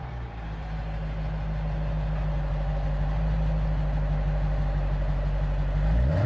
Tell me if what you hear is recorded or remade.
recorded